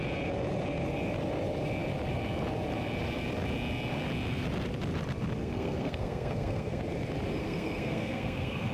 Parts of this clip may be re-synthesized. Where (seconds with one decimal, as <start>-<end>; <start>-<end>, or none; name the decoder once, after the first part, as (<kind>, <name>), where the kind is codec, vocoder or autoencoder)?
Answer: 5.4-6.8 (codec, SNAC); 7.4-8.7